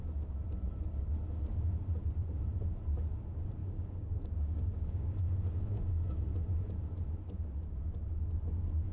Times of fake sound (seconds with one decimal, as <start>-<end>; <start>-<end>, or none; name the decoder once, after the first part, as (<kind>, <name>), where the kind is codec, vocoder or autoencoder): 3.6-6.2 (codec, DAC)